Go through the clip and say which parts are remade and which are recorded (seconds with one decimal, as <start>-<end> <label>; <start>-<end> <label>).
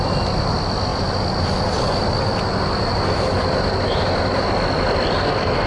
0.0-5.7 recorded